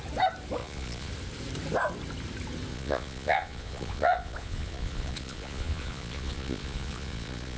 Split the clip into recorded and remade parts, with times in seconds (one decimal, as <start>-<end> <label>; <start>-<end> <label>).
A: 0.0-0.6 recorded; 0.6-1.1 remade; 1.1-2.7 recorded; 2.7-7.6 remade